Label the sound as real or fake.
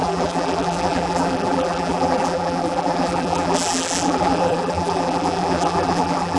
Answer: fake